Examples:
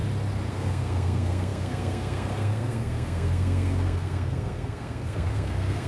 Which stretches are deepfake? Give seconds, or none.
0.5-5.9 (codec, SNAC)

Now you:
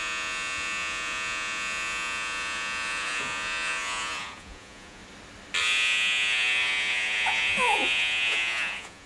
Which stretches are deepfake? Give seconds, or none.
0.0-5.0 (vocoder, Vocos); 5.6-9.1

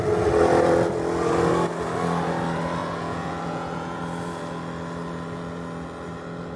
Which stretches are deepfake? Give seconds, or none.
2.8-4.0 (vocoder, Vocos)

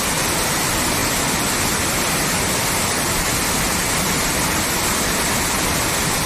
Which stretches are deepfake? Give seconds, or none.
none

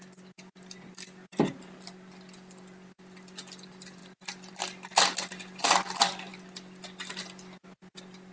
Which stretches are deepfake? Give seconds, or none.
none